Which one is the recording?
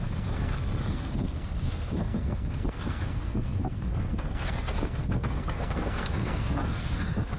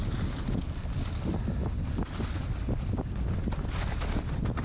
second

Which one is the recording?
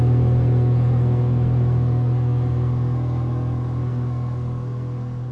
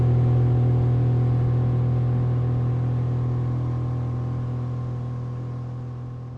second